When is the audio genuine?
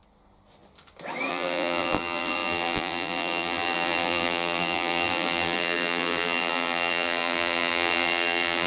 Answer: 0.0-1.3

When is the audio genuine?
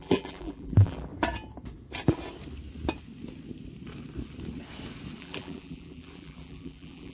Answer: 1.1-5.2